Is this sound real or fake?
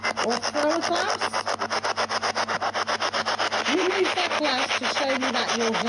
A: real